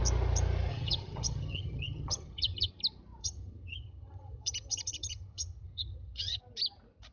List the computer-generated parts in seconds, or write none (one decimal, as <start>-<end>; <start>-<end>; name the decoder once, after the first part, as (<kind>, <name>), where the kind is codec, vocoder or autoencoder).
0.7-2.7 (vocoder, HiFi-GAN); 3.2-6.4